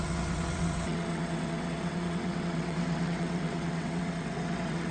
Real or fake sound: fake